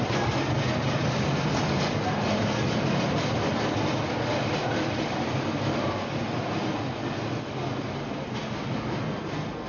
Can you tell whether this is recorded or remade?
recorded